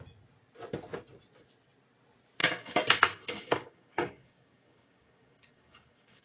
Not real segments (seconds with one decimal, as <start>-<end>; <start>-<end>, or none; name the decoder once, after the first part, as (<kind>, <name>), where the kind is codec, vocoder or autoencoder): 2.4-6.2 (codec, DAC)